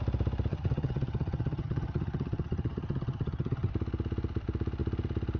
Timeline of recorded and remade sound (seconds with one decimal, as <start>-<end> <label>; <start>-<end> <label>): 0.0-0.5 recorded; 0.5-3.7 remade; 3.7-5.4 recorded